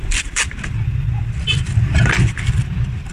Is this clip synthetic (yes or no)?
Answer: no